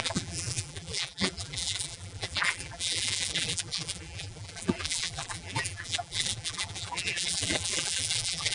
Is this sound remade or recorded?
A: remade